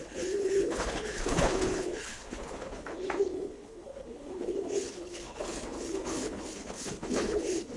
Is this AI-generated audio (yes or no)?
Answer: yes